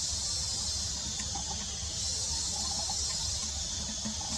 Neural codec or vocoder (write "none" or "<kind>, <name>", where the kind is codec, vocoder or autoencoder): none